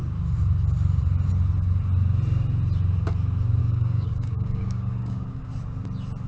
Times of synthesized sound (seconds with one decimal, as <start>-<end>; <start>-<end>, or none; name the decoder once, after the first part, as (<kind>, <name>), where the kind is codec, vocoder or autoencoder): 3.6-5.5 (codec, DAC)